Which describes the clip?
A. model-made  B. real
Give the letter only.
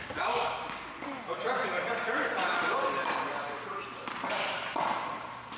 B